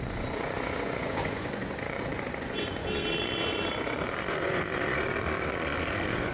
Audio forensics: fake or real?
fake